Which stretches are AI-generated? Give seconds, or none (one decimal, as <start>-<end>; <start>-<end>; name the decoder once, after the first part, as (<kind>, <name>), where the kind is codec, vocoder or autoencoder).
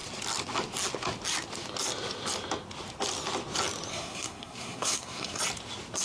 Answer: 3.9-5.4 (codec, SNAC)